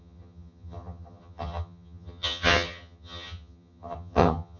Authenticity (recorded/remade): remade